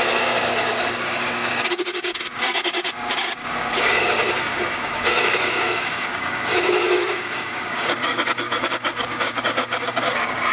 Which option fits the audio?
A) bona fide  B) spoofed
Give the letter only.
B